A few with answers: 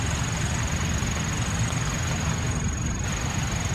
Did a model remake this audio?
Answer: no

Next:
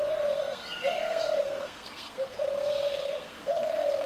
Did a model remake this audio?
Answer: yes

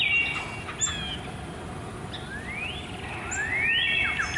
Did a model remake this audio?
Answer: no